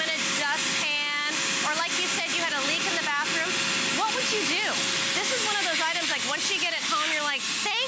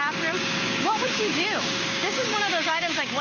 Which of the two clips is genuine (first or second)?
first